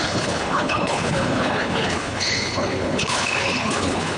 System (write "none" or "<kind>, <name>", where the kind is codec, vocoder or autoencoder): codec, HILCodec